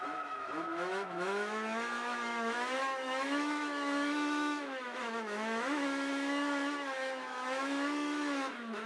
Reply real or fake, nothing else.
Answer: fake